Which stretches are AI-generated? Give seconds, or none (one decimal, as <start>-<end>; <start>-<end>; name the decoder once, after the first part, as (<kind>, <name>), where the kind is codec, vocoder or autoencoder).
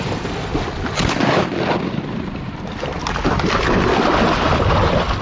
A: 0.0-0.5 (vocoder, BigVGAN v2); 3.6-5.2